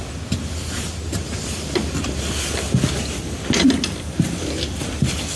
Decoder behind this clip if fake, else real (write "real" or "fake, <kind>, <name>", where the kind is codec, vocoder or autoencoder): real